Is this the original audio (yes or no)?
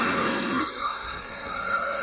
no